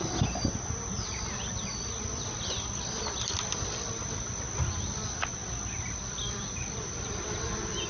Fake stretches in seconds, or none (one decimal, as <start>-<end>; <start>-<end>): none